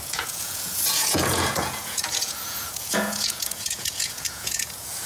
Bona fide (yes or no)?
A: no